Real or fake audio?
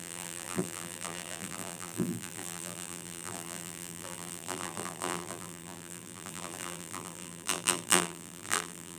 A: fake